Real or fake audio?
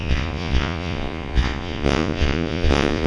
fake